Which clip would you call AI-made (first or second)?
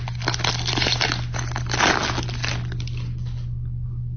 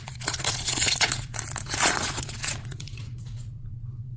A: second